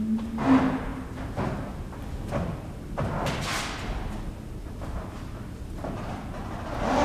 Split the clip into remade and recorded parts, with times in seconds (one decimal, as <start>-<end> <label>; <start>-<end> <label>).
0.0-7.0 recorded